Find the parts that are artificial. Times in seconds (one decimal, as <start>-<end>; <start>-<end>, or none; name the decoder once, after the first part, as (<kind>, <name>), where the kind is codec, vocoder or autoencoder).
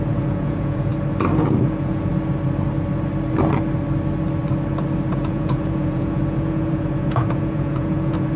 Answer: 0.0-0.9 (vocoder, Vocos); 1.6-2.1; 5.1-8.4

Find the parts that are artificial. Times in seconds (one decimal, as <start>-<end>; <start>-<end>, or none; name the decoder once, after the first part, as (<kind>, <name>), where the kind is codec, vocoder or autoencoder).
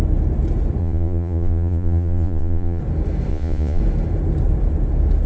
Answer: 0.8-2.8 (vocoder, Vocos); 3.3-3.8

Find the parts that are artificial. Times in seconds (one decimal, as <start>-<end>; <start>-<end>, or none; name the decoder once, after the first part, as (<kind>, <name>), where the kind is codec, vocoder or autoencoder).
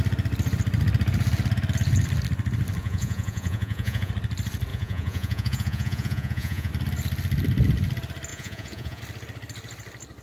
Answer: 2.8-4.1 (vocoder, Vocos); 4.7-6.7; 8.3-9.0